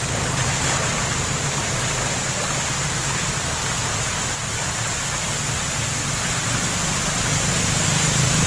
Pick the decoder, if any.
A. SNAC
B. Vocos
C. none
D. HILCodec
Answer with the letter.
C